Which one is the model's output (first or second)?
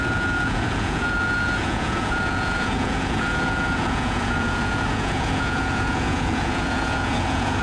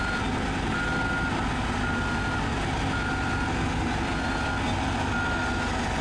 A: first